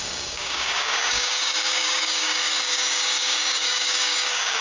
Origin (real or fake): fake